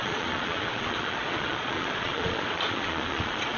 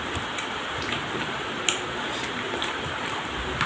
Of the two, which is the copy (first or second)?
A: first